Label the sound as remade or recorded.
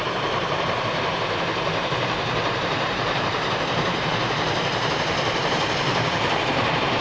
remade